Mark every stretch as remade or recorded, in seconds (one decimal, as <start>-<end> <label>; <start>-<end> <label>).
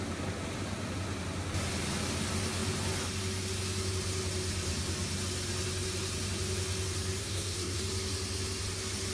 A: 0.0-7.2 recorded; 7.2-7.8 remade; 7.8-9.1 recorded